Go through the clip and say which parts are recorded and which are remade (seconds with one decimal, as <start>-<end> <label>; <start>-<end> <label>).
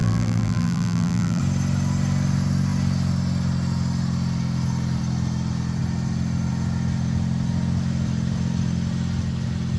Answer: 0.0-1.4 remade; 1.4-9.8 recorded